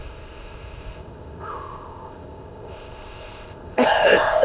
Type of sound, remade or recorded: remade